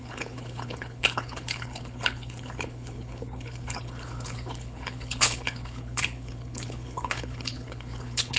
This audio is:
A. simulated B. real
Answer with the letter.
A